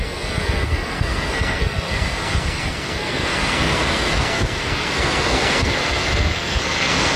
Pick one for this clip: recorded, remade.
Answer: remade